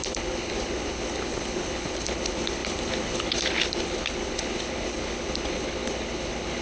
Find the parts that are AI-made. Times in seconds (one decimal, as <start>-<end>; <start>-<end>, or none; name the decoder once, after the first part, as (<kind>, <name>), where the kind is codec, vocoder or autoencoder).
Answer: 0.0-6.6 (codec, HILCodec)